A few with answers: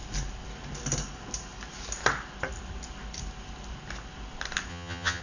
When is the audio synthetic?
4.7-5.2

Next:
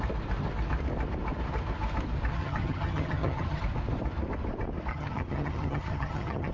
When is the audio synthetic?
2.3-3.6; 4.9-6.5

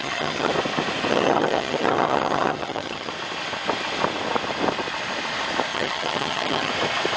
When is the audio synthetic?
0.0-0.5; 1.1-3.1; 5.7-6.7

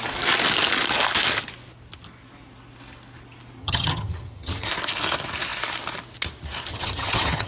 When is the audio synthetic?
3.6-4.7; 6.7-7.5

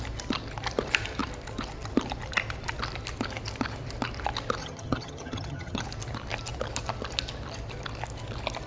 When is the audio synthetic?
4.6-5.8

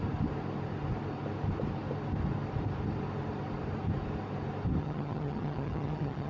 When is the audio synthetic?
4.8-6.3

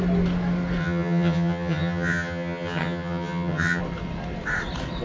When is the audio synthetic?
0.8-3.8